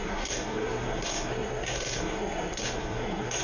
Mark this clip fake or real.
fake